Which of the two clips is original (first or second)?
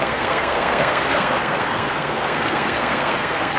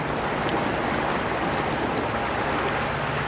second